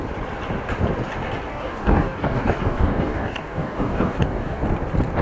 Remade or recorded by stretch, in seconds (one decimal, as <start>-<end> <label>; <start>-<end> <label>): 0.0-1.5 recorded; 1.5-4.6 remade; 4.6-5.2 recorded